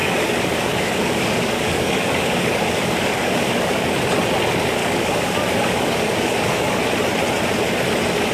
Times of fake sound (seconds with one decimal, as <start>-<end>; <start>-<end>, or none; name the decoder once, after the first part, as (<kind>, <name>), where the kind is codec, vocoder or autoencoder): 0.0-3.9 (codec, DAC); 4.8-6.8